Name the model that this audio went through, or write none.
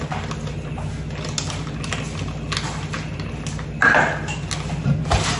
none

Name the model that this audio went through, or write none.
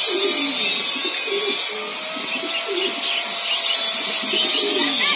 none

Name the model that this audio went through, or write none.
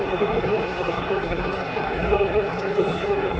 codec, SNAC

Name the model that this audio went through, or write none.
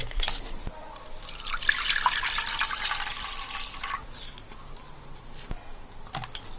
none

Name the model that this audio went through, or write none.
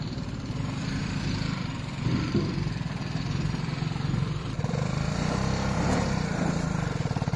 vocoder, BigVGAN v2